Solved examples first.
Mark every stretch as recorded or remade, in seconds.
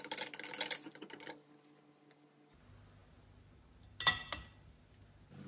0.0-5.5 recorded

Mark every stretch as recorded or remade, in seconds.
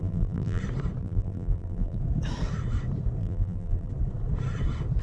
0.0-0.6 remade; 0.6-1.0 recorded; 1.0-2.0 remade; 2.0-3.2 recorded; 3.2-3.9 remade; 3.9-5.0 recorded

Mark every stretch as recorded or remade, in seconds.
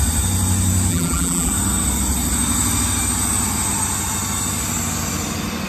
0.0-0.9 recorded; 0.9-1.5 remade; 1.5-5.7 recorded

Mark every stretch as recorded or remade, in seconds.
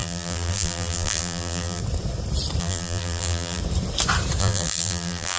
0.0-1.8 remade; 1.8-2.6 recorded; 2.6-3.6 remade; 3.6-4.4 recorded; 4.4-5.4 remade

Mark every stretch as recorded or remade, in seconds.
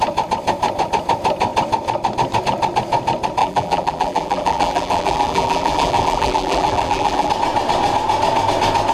0.0-3.4 recorded; 3.4-7.3 remade; 7.3-8.9 recorded